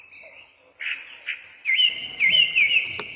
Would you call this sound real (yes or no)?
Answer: yes